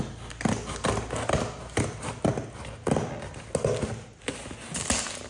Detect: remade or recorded recorded